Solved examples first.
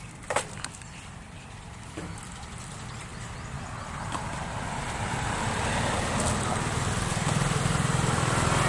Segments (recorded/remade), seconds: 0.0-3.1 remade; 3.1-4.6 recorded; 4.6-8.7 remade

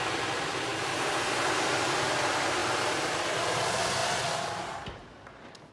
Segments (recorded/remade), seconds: 0.0-5.7 recorded

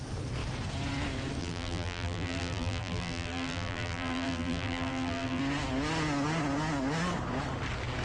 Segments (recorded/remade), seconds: 0.0-1.4 recorded; 1.4-5.4 remade; 5.4-8.0 recorded

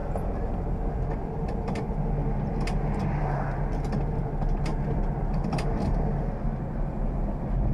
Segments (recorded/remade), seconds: 0.0-2.0 remade; 2.0-4.7 recorded; 4.7-5.7 remade; 5.7-7.7 recorded